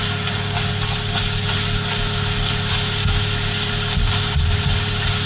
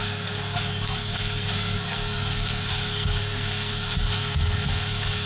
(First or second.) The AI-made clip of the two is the second